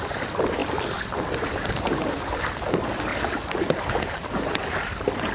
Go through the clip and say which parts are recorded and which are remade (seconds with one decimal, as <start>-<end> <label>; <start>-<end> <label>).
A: 0.0-0.6 recorded; 0.6-1.5 remade; 1.5-3.1 recorded; 3.1-4.6 remade; 4.6-5.3 recorded